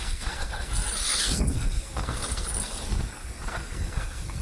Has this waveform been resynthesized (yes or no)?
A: yes